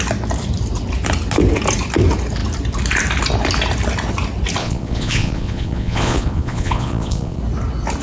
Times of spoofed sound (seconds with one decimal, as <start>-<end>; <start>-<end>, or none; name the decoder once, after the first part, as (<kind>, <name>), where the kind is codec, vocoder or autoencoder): 4.6-7.4 (vocoder, Vocos)